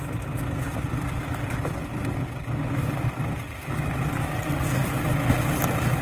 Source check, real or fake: real